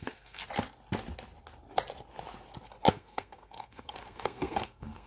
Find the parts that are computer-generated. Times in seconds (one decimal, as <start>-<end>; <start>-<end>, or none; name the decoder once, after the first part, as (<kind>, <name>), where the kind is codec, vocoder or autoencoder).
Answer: 0.0-0.4 (codec, SNAC); 2.9-5.1